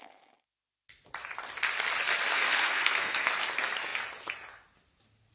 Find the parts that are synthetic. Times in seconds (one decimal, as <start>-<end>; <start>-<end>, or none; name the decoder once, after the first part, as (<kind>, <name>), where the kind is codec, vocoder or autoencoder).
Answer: 2.3-3.3 (codec, SNAC)